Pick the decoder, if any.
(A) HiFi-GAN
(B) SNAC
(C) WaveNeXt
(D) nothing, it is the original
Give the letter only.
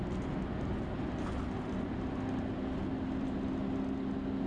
D